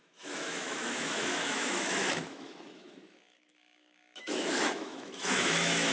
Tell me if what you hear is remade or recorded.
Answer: remade